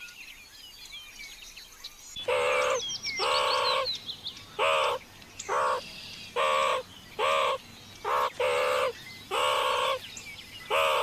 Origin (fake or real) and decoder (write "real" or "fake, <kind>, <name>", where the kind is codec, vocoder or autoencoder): real